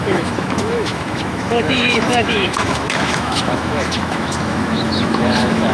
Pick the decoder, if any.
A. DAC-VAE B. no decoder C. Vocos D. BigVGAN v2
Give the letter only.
A